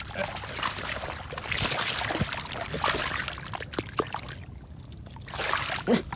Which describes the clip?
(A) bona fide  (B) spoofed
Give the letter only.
A